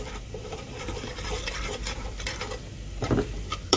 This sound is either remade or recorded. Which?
remade